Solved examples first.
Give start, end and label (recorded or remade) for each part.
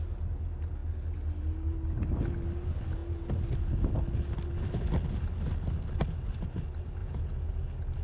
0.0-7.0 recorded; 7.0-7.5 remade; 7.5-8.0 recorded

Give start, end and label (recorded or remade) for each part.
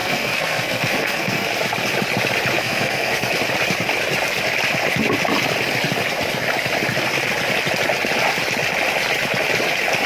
0.0-1.5 remade; 1.5-2.6 recorded; 2.6-3.3 remade; 3.3-10.1 recorded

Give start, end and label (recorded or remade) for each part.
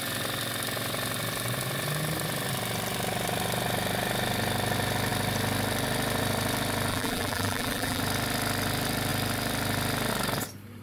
0.0-6.9 recorded; 6.9-8.0 remade; 8.0-10.8 recorded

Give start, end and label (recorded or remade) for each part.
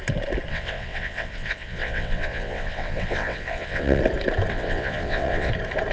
0.0-0.5 recorded; 0.5-4.0 remade; 4.0-4.5 recorded; 4.5-5.5 remade; 5.5-5.9 recorded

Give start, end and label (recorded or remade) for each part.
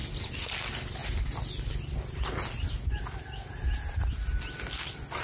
0.0-5.2 recorded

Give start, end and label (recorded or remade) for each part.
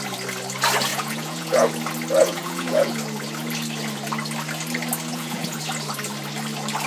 0.0-0.9 recorded; 0.9-1.7 remade; 1.7-2.2 recorded; 2.2-2.9 remade; 2.9-5.1 recorded; 5.1-5.6 remade; 5.6-6.9 recorded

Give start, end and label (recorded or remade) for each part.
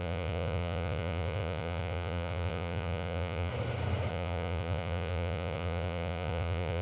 0.0-3.5 remade; 3.5-4.1 recorded; 4.1-6.8 remade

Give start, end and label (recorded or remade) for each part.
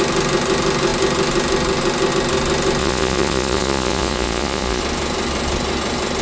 0.0-2.8 recorded; 2.8-4.8 remade; 4.8-6.2 recorded